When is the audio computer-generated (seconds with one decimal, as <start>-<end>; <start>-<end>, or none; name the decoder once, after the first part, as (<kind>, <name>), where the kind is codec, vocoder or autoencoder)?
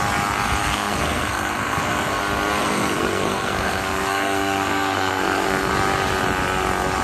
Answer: 0.6-2.2 (codec, SNAC); 2.6-5.7